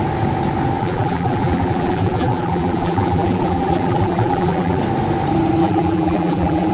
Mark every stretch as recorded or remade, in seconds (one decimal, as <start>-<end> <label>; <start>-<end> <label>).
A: 0.0-0.8 recorded; 0.8-4.8 remade; 4.8-5.6 recorded; 5.6-6.7 remade